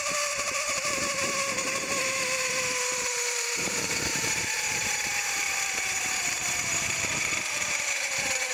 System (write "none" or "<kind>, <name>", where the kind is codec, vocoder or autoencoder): vocoder, BigVGAN v2